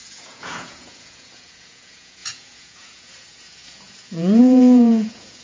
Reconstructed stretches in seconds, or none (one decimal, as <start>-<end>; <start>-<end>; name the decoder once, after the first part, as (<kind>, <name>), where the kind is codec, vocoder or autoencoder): 0.0-5.4 (vocoder, Vocos)